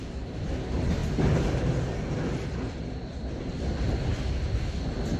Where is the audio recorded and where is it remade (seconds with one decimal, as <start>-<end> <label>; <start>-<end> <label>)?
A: 0.0-1.0 remade; 1.0-4.1 recorded; 4.1-5.2 remade